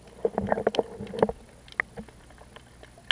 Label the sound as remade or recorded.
recorded